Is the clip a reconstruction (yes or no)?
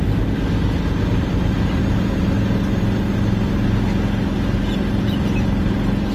no